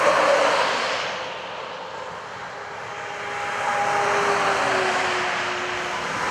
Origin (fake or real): real